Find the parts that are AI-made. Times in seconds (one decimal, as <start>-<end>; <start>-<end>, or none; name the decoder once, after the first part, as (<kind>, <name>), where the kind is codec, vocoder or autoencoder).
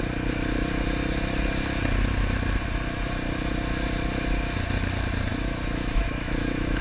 5.3-6.8 (autoencoder, DAC-VAE)